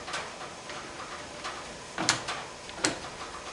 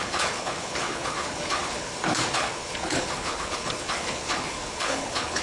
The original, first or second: first